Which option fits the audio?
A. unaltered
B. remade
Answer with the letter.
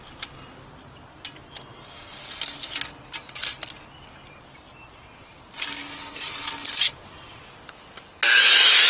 A